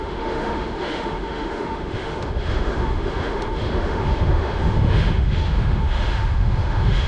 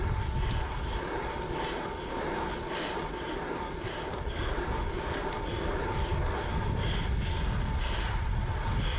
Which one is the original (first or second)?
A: second